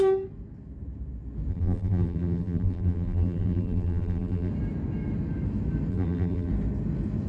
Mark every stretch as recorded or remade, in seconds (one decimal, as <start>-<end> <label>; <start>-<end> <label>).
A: 0.0-1.5 recorded; 1.5-4.5 remade; 4.5-5.9 recorded; 5.9-6.5 remade; 6.5-7.3 recorded